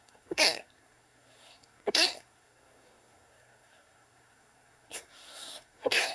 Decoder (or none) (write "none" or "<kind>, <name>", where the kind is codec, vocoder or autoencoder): codec, SNAC